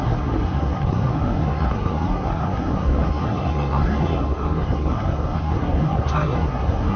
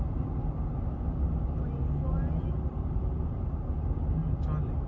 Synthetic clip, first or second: first